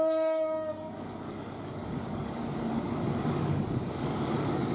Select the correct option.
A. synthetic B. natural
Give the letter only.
A